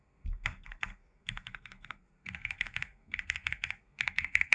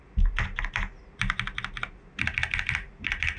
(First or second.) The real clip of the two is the second